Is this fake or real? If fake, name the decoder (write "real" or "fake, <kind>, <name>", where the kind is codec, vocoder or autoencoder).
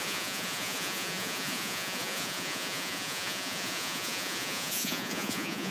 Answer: fake, vocoder, Vocos